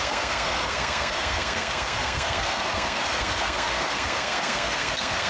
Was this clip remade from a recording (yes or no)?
yes